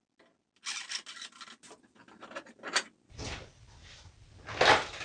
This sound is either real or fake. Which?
real